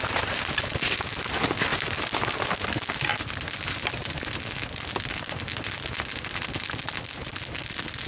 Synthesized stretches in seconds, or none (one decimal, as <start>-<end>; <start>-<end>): none